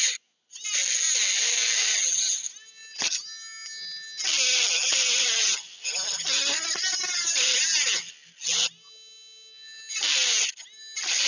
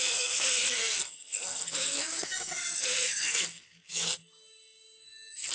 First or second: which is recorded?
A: first